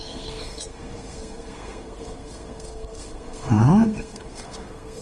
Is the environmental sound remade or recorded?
remade